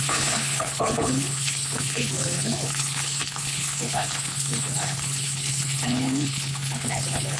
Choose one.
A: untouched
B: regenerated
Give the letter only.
B